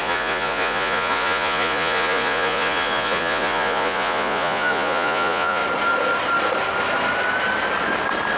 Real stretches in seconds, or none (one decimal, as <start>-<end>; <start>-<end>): 5.6-8.4